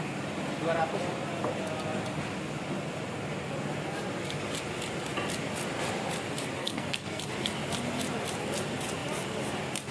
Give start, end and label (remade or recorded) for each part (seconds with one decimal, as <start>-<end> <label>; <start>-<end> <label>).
0.0-6.6 recorded; 6.6-7.2 remade; 7.2-9.9 recorded

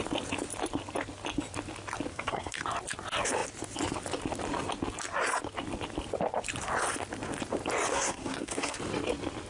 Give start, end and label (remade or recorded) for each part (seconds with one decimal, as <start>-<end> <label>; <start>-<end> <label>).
0.0-2.1 recorded; 2.1-2.6 remade; 2.6-7.9 recorded; 7.9-8.8 remade; 8.8-9.5 recorded

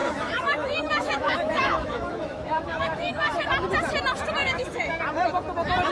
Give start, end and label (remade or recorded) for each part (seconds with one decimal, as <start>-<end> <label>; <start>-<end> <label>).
0.0-3.5 remade; 3.5-4.4 recorded; 4.4-5.0 remade; 5.0-5.9 recorded

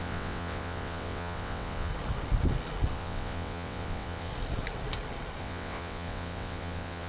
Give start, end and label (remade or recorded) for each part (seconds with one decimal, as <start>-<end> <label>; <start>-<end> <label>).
0.0-1.9 remade; 1.9-2.9 recorded; 2.9-4.3 remade; 4.3-5.4 recorded; 5.4-7.1 remade

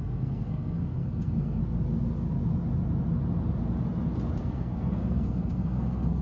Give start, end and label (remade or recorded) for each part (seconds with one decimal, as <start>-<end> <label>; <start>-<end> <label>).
0.0-1.6 remade; 1.6-4.4 recorded; 4.4-6.2 remade

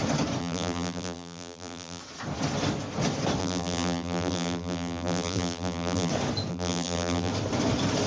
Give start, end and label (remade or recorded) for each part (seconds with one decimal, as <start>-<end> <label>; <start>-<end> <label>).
0.0-0.4 recorded; 0.4-2.0 remade; 2.0-3.4 recorded; 3.4-6.1 remade; 6.1-6.5 recorded; 6.5-7.3 remade; 7.3-8.1 recorded

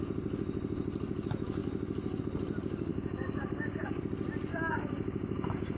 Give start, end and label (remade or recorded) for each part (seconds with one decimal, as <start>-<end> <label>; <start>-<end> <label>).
0.0-2.9 recorded; 2.9-4.0 remade; 4.0-4.5 recorded; 4.5-5.8 remade

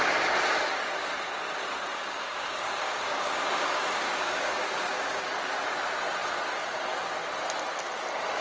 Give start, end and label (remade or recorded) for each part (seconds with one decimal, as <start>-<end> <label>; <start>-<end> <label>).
0.0-1.9 recorded; 1.9-5.3 remade; 5.3-8.4 recorded